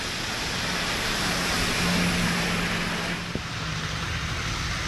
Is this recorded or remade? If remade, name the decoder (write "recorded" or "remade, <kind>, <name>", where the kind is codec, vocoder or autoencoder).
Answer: recorded